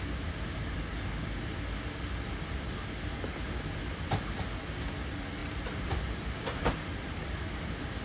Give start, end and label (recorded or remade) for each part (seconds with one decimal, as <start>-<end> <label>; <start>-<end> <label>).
0.0-5.4 recorded; 5.4-6.9 remade; 6.9-8.0 recorded